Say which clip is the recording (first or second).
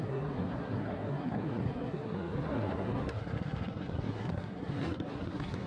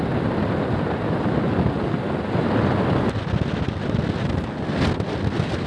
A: second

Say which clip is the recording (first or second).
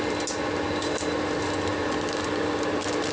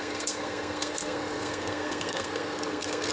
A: first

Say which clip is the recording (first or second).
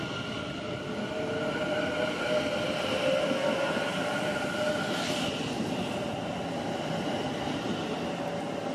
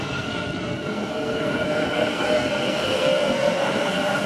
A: first